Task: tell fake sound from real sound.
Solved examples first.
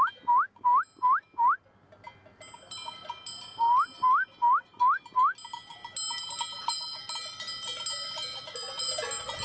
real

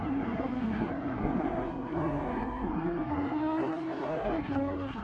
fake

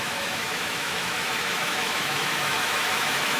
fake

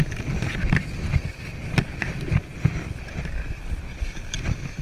real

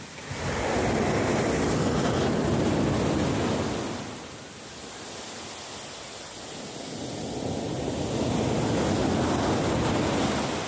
real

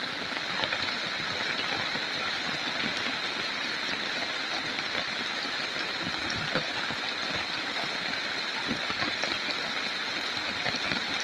real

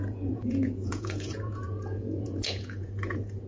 fake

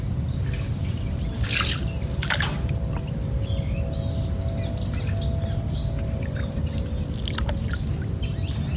real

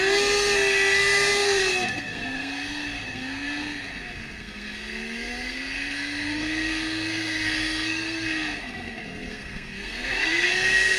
fake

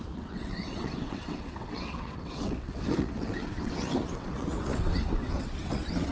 fake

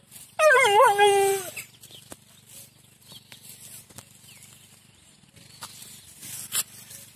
real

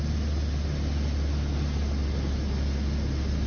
real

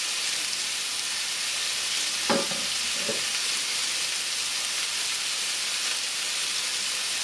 real